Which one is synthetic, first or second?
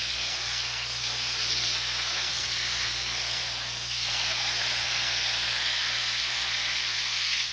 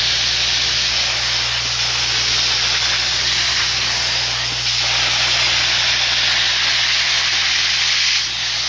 first